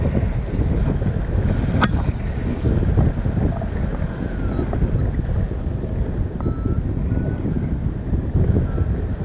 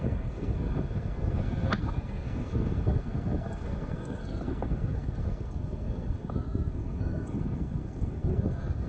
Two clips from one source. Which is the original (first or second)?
first